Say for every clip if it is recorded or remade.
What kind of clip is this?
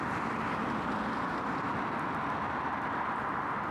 recorded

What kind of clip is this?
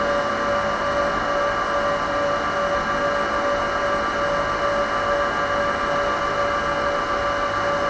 recorded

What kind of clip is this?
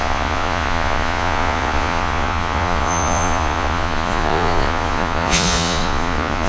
remade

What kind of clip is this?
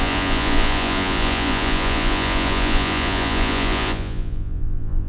remade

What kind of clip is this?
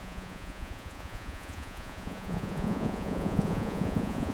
remade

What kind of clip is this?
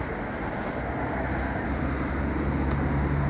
recorded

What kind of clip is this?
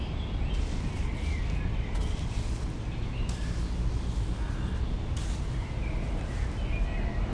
recorded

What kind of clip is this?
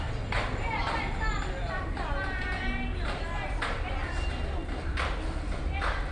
recorded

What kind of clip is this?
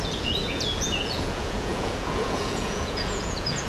remade